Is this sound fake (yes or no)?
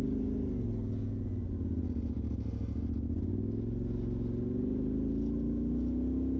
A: no